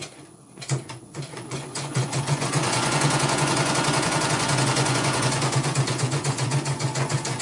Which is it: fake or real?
fake